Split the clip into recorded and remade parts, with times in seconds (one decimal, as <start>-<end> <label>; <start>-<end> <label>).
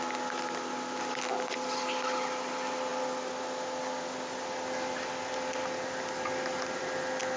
0.0-7.4 recorded